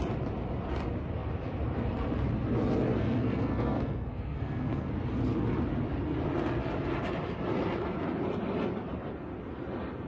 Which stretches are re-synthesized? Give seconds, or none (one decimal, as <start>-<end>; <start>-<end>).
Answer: 2.9-4.9